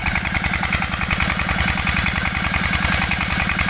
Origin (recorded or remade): recorded